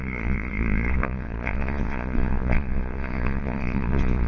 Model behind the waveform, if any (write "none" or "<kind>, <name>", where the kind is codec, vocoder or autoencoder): vocoder, Vocos